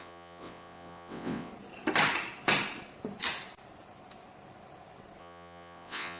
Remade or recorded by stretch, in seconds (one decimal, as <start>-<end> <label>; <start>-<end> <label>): 0.0-1.5 remade; 1.5-5.2 recorded; 5.2-6.2 remade